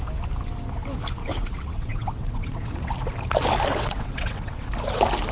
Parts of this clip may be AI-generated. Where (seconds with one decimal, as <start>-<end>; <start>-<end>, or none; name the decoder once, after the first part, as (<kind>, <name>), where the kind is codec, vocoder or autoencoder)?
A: 1.2-2.9 (vocoder, WaveNeXt); 3.7-4.7